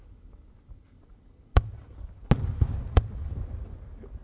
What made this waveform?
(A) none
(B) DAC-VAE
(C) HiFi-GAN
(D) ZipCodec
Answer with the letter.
A